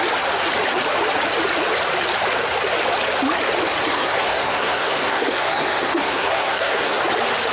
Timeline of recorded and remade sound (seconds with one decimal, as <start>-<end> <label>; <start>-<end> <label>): 0.0-3.8 recorded; 3.8-7.0 remade; 7.0-7.5 recorded